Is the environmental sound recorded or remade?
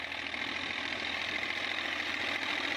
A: recorded